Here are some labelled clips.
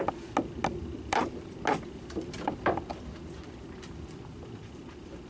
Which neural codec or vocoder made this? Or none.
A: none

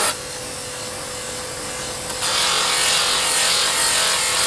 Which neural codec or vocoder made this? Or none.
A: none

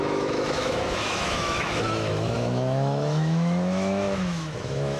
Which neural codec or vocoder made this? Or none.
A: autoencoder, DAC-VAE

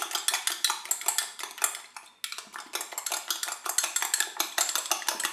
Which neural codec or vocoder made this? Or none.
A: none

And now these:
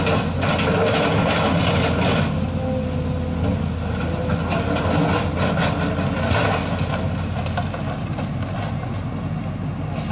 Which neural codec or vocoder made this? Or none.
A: none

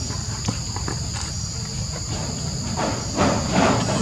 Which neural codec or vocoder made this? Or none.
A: none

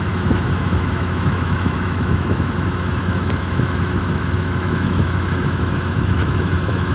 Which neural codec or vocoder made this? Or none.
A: autoencoder, DAC-VAE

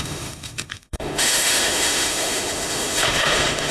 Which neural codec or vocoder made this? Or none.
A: autoencoder, DAC-VAE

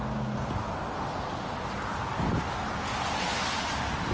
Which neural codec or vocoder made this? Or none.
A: none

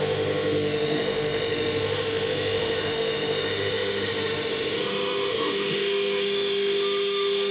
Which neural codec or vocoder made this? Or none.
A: autoencoder, DAC-VAE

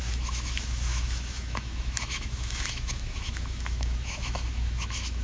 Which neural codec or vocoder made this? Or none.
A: autoencoder, DAC-VAE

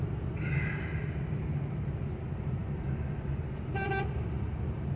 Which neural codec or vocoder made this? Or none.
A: none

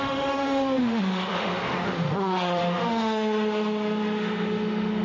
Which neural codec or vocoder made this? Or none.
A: autoencoder, DAC-VAE